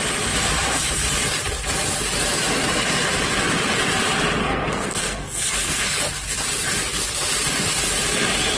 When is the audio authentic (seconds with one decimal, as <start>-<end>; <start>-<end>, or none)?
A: 0.0-4.4; 6.0-8.6